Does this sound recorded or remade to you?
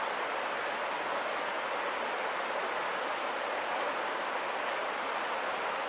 recorded